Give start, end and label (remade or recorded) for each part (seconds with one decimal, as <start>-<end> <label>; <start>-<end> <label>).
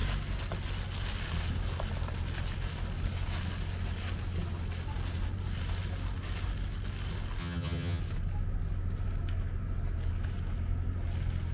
0.0-7.4 recorded; 7.4-8.0 remade; 8.0-11.5 recorded